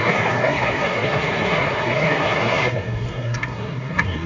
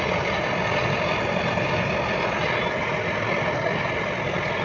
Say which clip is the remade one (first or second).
first